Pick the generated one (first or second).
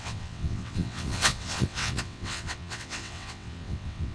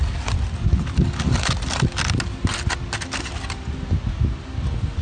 first